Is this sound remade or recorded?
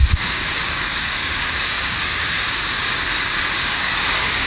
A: remade